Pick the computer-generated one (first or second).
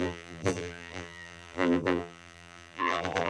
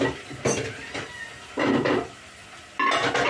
first